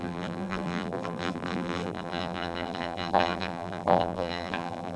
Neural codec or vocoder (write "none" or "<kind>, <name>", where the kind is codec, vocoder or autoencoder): vocoder, BigVGAN v2